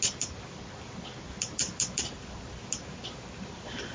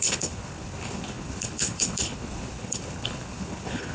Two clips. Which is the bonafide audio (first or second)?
first